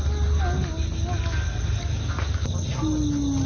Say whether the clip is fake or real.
real